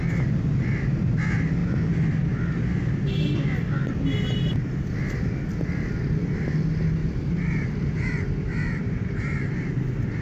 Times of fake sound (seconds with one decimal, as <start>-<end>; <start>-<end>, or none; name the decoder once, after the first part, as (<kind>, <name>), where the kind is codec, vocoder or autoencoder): 7.0-9.7 (vocoder, BigVGAN v2)